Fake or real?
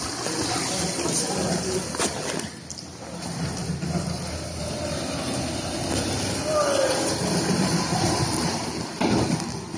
real